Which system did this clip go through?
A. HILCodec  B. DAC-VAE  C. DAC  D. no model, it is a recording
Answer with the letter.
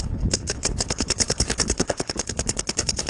A